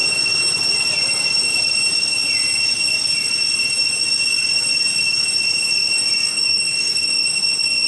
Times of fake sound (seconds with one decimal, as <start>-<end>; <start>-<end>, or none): 6.3-7.9